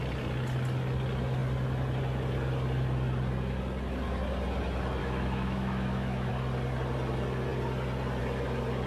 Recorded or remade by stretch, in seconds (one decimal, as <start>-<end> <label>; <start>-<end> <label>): 0.0-5.0 recorded; 5.0-6.3 remade; 6.3-8.9 recorded